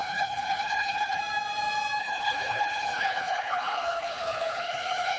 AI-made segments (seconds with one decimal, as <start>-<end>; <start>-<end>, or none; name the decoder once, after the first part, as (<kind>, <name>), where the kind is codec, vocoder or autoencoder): 0.0-1.2 (codec, HILCodec); 2.0-5.2